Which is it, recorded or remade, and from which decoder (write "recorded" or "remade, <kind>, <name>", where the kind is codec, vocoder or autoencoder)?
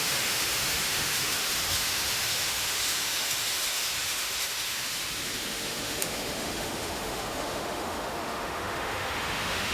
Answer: remade, autoencoder, DAC-VAE